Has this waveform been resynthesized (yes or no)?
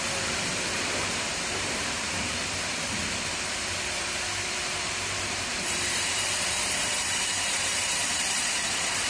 yes